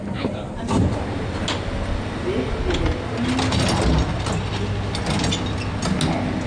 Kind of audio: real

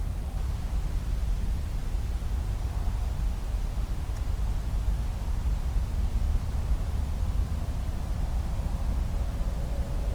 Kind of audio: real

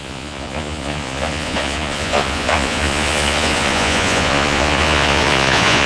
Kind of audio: fake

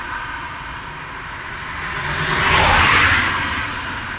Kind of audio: real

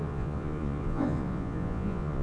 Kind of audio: fake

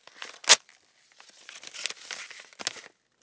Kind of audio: real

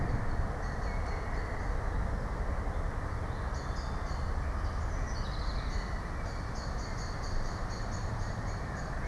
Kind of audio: real